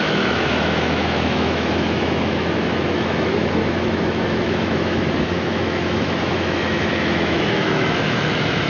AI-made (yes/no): yes